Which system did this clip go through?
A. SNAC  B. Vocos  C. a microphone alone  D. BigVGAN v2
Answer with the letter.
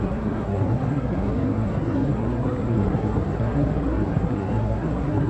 A